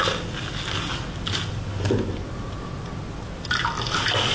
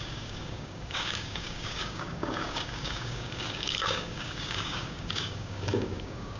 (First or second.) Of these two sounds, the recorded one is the first